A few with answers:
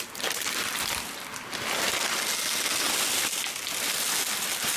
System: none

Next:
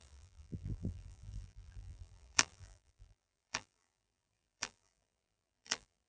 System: vocoder, BigVGAN v2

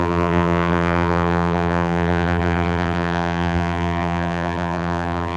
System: vocoder, BigVGAN v2